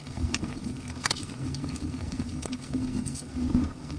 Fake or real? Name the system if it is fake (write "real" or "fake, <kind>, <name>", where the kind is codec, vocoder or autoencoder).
fake, codec, SNAC